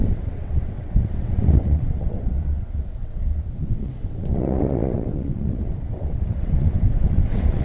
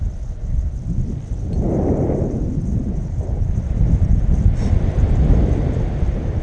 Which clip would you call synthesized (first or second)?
first